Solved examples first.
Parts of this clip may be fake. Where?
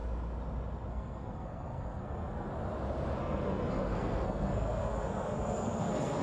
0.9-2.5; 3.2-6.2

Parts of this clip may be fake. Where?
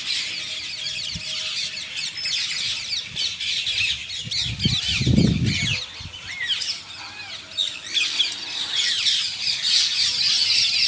none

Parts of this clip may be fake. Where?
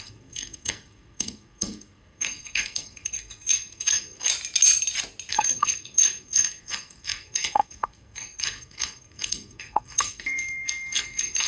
0.0-4.3; 5.3-11.5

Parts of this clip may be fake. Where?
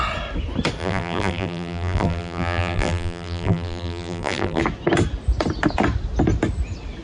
0.8-4.6